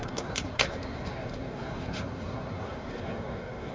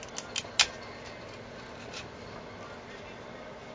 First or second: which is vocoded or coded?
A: first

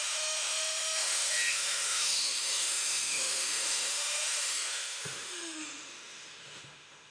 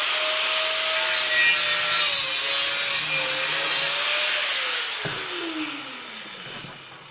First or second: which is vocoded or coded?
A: first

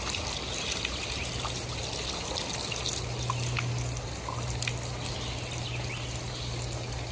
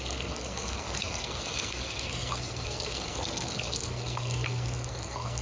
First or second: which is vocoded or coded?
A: second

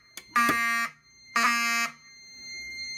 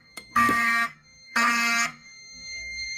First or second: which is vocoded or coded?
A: second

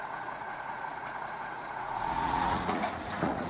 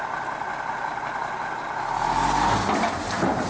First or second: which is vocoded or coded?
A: first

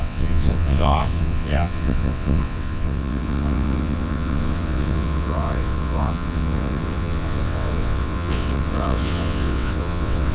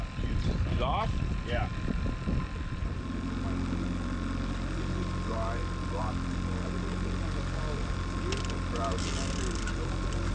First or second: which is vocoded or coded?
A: first